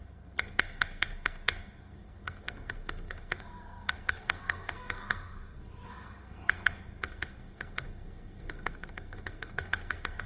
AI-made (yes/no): yes